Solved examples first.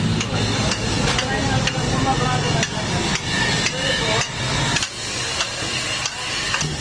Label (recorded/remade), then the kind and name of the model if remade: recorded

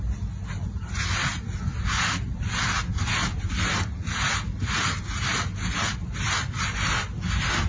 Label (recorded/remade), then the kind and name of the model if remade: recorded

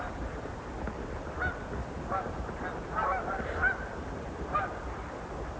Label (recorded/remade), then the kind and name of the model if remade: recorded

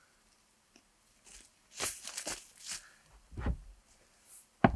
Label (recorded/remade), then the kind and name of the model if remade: recorded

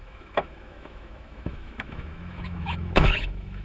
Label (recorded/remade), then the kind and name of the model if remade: remade, autoencoder, DAC-VAE